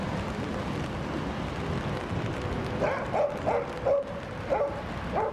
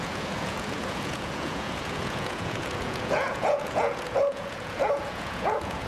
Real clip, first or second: first